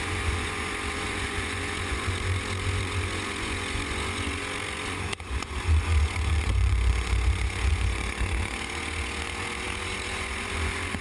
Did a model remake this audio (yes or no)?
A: yes